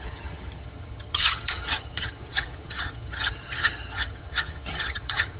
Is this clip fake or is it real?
fake